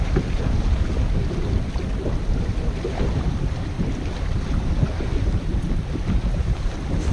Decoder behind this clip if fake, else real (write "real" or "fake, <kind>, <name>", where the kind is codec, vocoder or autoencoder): real